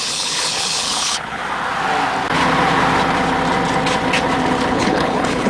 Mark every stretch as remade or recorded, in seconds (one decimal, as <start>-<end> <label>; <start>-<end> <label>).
0.0-1.4 remade; 1.4-4.7 recorded; 4.7-5.5 remade